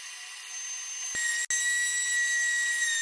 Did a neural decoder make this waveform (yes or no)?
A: no